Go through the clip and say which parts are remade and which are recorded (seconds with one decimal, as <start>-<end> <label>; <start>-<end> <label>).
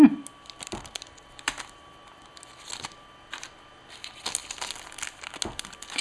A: 0.0-6.0 recorded